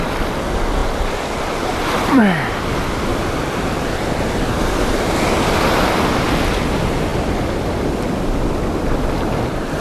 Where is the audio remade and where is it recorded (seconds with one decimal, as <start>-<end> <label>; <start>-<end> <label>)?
0.0-0.8 recorded; 0.8-1.4 remade; 1.4-3.1 recorded; 3.1-4.5 remade; 4.5-9.8 recorded

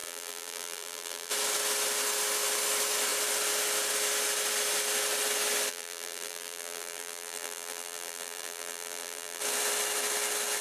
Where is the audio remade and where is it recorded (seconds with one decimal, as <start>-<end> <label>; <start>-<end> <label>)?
0.0-1.3 remade; 1.3-5.7 recorded; 5.7-9.4 remade; 9.4-10.6 recorded

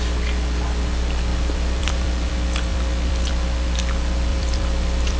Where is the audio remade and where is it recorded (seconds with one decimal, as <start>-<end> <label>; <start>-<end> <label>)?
0.0-1.3 recorded; 1.3-2.3 remade; 2.3-2.7 recorded; 2.7-3.3 remade; 3.3-4.3 recorded; 4.3-5.2 remade

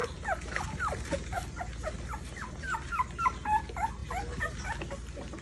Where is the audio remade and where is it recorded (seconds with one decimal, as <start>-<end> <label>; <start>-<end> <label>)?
0.0-2.9 remade; 2.9-5.4 recorded

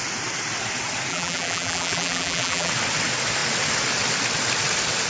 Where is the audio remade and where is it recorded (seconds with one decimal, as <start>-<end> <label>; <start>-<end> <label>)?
0.0-1.1 recorded; 1.1-2.7 remade; 2.7-5.1 recorded

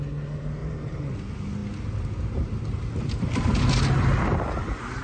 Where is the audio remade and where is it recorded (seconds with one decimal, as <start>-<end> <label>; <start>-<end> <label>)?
0.0-0.6 recorded; 0.6-1.2 remade; 1.2-5.0 recorded

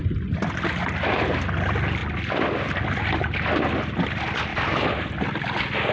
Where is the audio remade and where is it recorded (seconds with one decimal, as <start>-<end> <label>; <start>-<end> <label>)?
0.0-4.5 recorded; 4.5-5.2 remade; 5.2-5.9 recorded